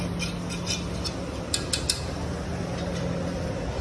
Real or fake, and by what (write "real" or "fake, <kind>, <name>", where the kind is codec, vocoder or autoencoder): real